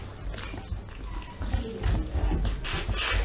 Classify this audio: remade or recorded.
recorded